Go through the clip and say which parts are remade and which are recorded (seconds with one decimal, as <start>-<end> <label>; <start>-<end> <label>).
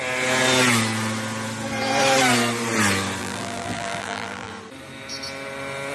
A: 0.0-3.2 recorded; 3.2-4.5 remade; 4.5-5.9 recorded